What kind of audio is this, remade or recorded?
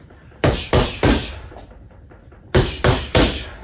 remade